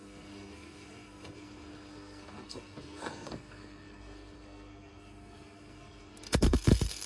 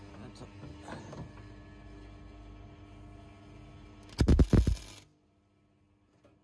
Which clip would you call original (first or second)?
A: second